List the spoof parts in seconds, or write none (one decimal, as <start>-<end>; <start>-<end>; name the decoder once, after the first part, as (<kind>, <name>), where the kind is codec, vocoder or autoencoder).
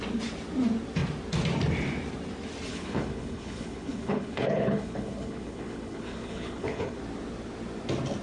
2.7-7.0 (codec, HILCodec)